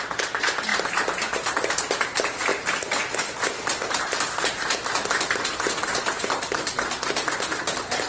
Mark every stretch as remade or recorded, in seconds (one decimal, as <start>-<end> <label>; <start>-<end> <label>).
0.0-2.5 recorded; 2.5-6.2 remade; 6.2-8.1 recorded